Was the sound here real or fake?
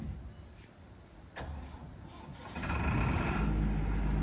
real